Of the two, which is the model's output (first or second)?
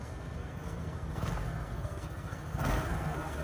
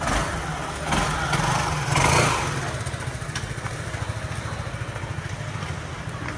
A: first